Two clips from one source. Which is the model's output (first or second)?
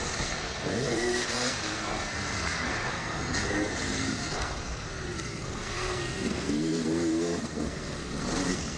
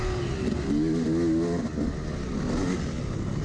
first